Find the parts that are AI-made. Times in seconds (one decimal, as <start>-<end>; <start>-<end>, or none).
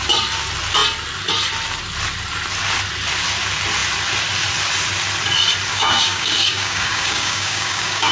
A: 5.7-8.1